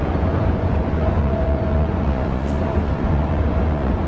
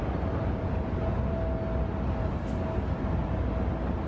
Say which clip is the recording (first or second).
second